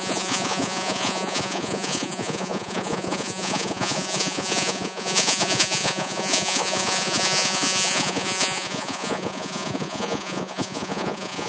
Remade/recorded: remade